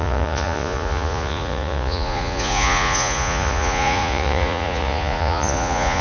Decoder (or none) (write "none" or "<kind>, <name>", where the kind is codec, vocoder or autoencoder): vocoder, Vocos